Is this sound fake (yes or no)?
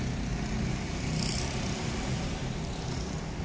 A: no